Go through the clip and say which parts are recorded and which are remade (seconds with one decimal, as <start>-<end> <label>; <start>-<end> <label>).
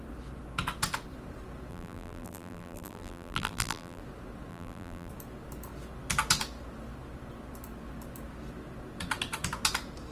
0.0-1.7 recorded; 1.7-4.0 remade; 4.0-4.5 recorded; 4.5-5.1 remade; 5.1-10.1 recorded